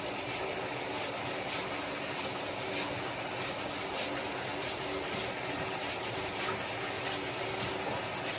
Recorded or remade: recorded